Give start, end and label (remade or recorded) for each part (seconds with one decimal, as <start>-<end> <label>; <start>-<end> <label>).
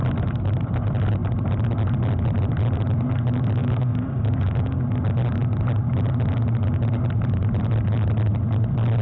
0.0-3.6 recorded; 3.6-4.8 remade; 4.8-9.0 recorded